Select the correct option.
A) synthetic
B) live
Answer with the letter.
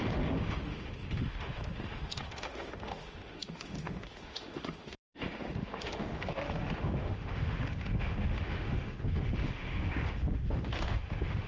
A